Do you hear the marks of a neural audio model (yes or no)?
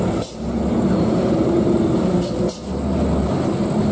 no